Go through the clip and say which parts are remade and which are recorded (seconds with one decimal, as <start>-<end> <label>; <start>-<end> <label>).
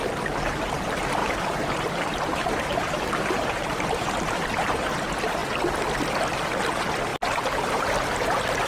0.0-1.2 recorded; 1.2-4.8 remade; 4.8-8.7 recorded